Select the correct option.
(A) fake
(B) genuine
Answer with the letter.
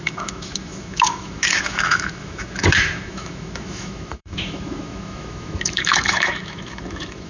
A